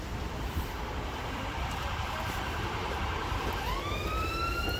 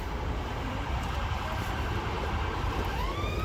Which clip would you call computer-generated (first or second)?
first